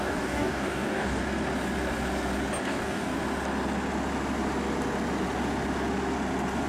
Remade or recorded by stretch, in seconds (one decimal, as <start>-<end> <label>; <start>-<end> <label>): 0.0-1.2 remade; 1.2-2.6 recorded; 2.6-3.1 remade; 3.1-6.7 recorded

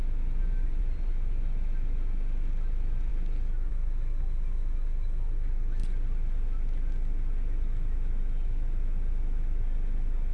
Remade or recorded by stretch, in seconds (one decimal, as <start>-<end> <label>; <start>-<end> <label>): 0.0-0.4 recorded; 0.4-1.1 remade; 1.1-10.3 recorded